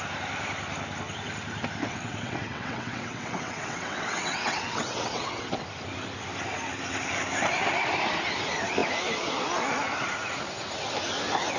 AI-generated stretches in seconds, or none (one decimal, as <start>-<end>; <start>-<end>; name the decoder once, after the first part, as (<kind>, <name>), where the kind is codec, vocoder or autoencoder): 1.8-5.6 (vocoder, WaveNeXt)